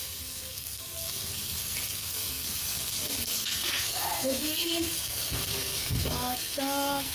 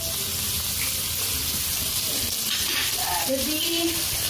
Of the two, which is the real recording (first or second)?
second